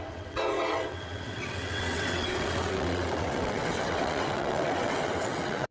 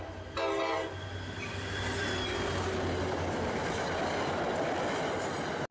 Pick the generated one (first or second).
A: first